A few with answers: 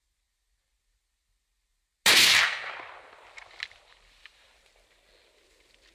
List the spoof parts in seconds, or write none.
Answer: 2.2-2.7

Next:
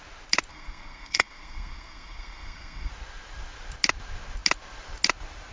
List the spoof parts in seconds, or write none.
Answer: 0.5-2.9

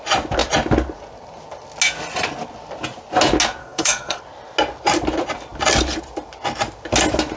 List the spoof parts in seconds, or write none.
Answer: 3.6-4.2

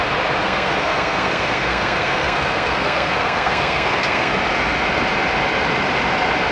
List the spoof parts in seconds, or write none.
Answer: 0.4-4.3

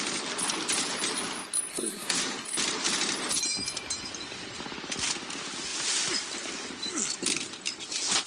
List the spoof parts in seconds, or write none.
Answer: 1.7-2.5

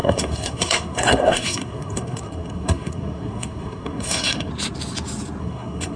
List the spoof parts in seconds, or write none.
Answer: 0.0-4.5; 5.4-6.0